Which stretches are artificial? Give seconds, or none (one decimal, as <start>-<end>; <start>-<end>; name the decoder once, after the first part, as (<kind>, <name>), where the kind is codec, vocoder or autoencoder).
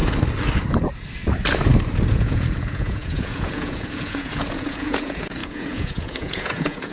2.1-6.9 (vocoder, Vocos)